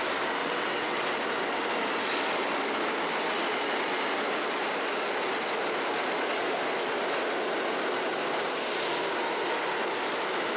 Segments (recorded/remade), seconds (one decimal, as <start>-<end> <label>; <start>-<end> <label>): 0.0-0.4 recorded; 0.4-1.0 remade; 1.0-10.6 recorded